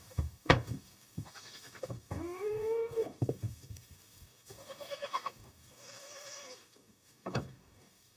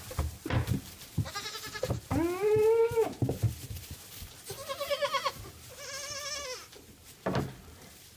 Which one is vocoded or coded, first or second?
first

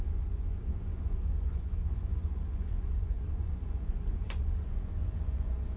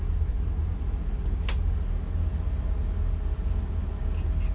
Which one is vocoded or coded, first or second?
first